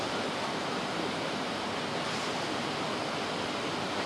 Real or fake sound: real